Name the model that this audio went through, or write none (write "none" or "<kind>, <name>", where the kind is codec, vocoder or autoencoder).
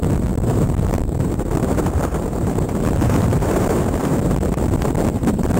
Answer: vocoder, BigVGAN v2